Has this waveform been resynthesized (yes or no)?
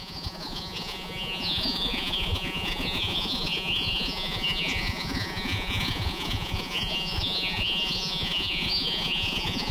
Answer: yes